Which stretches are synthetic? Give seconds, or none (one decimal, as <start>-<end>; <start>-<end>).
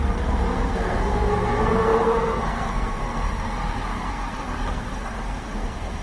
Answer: 0.0-6.0